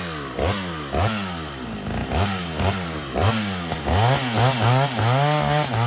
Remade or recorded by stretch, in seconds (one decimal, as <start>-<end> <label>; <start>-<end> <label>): 0.0-2.0 recorded; 2.0-3.8 remade; 3.8-5.9 recorded